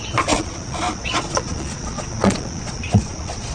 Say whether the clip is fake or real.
fake